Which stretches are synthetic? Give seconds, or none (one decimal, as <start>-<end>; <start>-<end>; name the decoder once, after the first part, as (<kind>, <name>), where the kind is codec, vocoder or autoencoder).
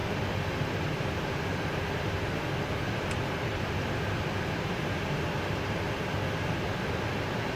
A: none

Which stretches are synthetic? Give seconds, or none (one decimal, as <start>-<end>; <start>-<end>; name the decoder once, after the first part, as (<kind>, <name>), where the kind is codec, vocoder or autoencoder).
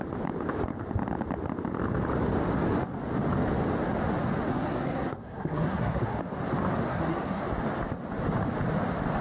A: 4.5-6.2 (codec, SNAC); 6.9-7.4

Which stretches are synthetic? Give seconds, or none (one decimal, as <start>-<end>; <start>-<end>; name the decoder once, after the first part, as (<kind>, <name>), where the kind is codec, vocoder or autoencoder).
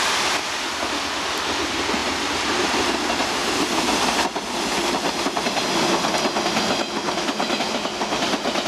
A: 2.0-5.9 (vocoder, BigVGAN v2)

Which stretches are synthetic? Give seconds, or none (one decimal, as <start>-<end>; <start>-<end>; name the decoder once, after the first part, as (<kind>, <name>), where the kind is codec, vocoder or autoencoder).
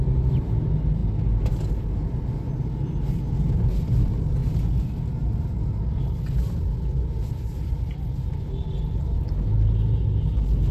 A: none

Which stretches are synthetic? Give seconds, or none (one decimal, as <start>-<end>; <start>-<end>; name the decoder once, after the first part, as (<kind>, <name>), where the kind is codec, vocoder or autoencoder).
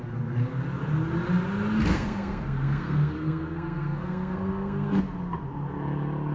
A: 1.9-5.0 (codec, SNAC)